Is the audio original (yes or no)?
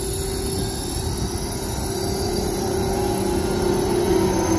yes